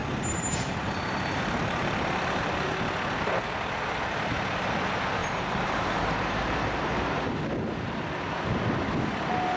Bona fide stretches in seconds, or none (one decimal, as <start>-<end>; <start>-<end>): 2.4-5.2; 7.2-9.6